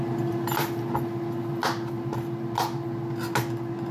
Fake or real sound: real